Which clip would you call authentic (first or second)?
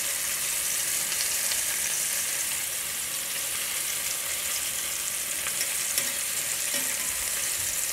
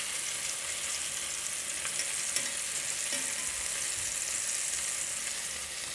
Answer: second